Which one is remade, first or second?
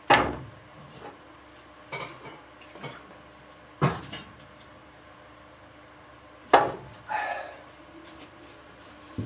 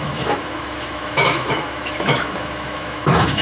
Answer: second